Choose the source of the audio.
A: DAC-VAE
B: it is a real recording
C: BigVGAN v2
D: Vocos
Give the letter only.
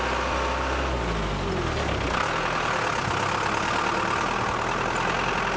B